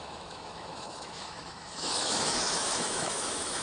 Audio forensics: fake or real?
fake